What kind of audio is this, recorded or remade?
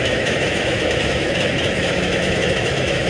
remade